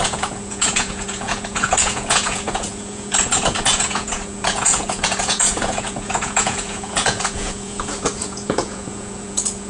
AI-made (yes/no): yes